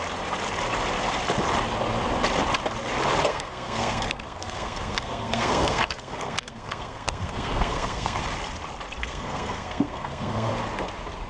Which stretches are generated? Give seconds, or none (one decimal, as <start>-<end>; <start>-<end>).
3.3-8.2; 9.0-10.5